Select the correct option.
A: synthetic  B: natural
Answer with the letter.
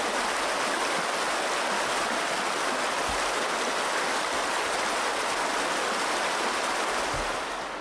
B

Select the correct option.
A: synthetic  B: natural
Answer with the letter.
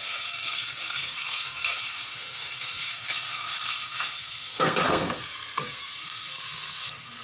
A